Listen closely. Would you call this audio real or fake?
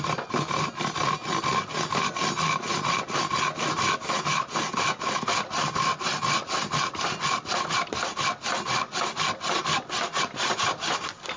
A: real